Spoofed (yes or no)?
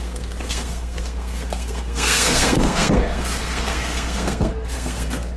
yes